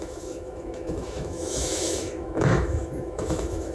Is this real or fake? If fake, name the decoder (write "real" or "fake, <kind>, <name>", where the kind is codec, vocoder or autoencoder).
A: fake, autoencoder, DAC-VAE